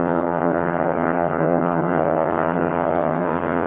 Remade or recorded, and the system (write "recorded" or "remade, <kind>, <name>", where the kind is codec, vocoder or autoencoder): remade, vocoder, HiFi-GAN